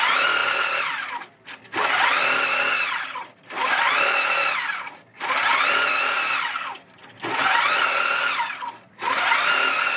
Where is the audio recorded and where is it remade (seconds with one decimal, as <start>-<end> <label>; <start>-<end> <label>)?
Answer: 0.0-10.0 recorded